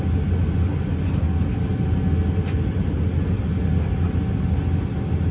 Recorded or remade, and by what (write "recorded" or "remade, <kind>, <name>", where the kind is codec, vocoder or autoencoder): recorded